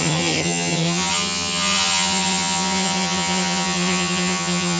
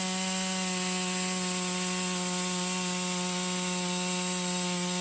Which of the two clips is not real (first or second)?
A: first